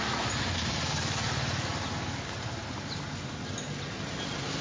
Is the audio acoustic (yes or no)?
yes